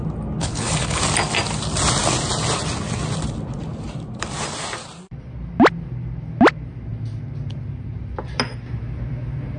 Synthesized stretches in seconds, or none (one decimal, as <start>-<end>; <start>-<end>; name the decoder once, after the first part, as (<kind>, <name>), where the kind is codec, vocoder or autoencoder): 0.4-1.0 (codec, HILCodec)